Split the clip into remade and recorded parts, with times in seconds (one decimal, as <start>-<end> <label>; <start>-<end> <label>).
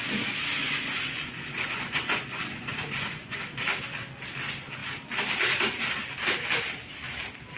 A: 0.0-0.6 recorded; 0.6-3.4 remade; 3.4-7.6 recorded